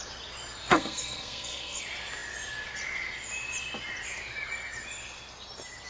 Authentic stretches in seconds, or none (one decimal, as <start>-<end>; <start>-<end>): 0.0-0.7; 1.8-5.9